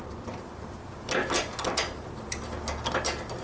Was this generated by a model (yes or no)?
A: no